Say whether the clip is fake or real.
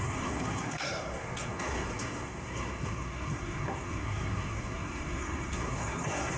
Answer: fake